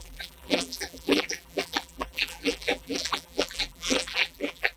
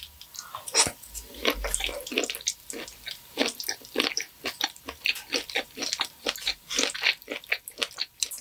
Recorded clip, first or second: second